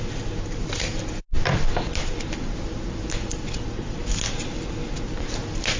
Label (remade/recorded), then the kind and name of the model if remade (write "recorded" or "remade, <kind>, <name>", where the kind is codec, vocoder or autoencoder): recorded